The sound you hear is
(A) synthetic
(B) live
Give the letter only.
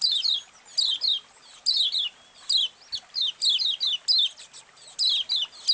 B